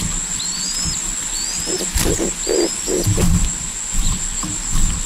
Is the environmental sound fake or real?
real